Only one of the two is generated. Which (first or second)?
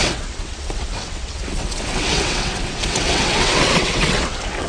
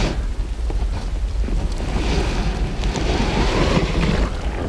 first